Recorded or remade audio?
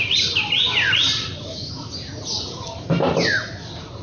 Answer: recorded